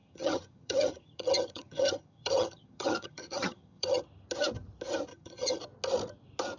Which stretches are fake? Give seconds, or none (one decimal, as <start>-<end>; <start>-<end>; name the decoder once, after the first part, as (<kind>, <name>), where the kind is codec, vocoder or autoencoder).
0.0-4.0 (vocoder, HiFi-GAN); 5.1-5.6